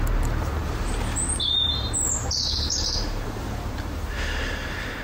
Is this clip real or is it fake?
fake